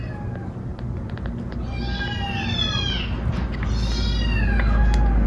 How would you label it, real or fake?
real